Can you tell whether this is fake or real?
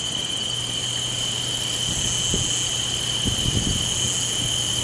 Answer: real